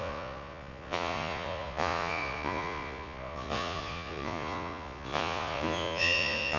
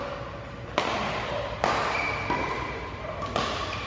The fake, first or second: first